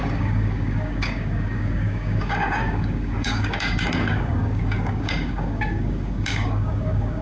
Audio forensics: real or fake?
fake